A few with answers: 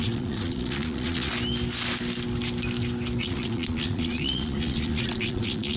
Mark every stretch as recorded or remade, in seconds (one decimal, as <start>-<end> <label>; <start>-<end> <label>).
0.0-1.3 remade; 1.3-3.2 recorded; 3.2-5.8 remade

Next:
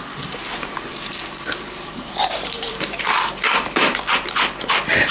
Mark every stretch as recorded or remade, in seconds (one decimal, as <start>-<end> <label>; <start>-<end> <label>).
0.0-0.9 recorded; 0.9-4.0 remade; 4.0-5.1 recorded

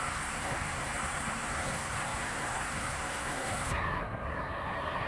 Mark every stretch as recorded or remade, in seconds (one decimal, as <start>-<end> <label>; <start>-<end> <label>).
0.0-5.1 remade